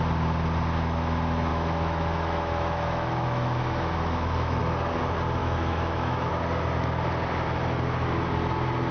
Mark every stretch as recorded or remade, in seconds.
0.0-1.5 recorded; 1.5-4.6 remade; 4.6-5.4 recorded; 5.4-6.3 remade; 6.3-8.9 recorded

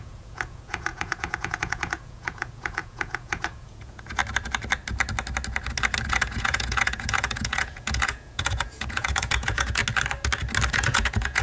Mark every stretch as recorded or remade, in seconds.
0.0-4.2 remade; 4.2-6.1 recorded; 6.1-9.8 remade; 9.8-10.7 recorded; 10.7-11.4 remade

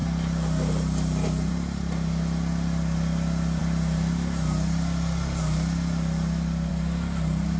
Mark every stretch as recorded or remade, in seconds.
0.0-7.6 recorded

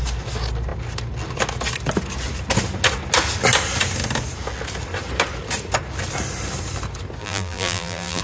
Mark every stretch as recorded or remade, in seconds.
0.0-7.2 recorded; 7.2-8.2 remade

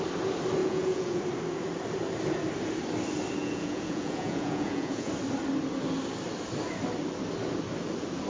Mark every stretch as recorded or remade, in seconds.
0.0-0.6 recorded; 0.6-1.2 remade; 1.2-3.4 recorded; 3.4-5.1 remade; 5.1-8.3 recorded

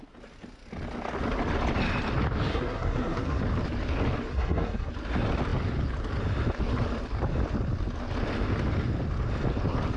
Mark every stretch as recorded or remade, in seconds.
0.0-2.5 recorded; 2.5-3.4 remade; 3.4-4.3 recorded; 4.3-4.9 remade; 4.9-10.0 recorded